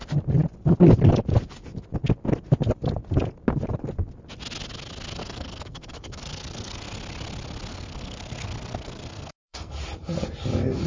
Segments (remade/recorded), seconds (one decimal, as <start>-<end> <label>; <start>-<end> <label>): 0.0-5.2 recorded; 5.2-6.9 remade; 6.9-7.7 recorded; 7.7-9.7 remade; 9.7-10.9 recorded